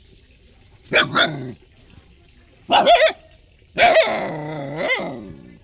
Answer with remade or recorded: recorded